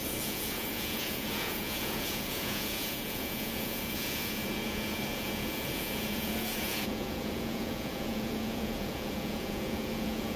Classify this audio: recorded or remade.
remade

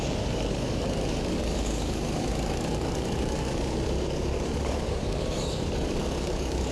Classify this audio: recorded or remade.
remade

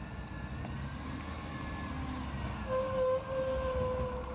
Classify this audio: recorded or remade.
recorded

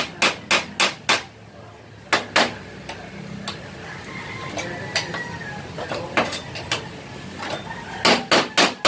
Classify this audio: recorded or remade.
recorded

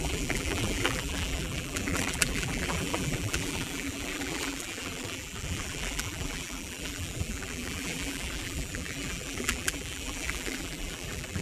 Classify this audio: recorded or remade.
remade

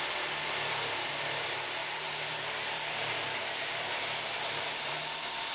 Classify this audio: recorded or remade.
remade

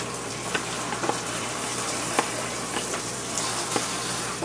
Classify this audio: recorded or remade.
remade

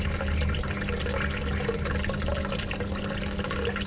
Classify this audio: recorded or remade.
recorded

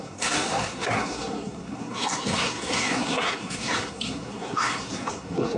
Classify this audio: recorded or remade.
remade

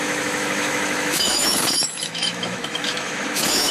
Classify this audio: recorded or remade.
remade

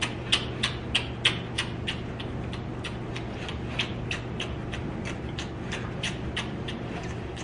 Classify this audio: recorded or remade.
recorded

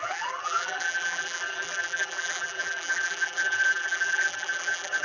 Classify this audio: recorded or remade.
remade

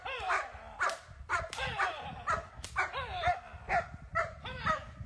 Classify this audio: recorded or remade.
remade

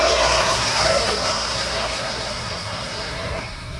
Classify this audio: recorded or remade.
remade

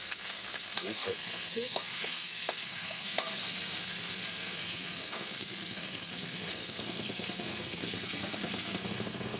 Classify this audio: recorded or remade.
remade